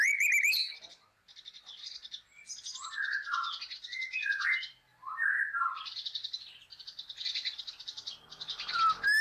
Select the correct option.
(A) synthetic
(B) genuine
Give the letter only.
A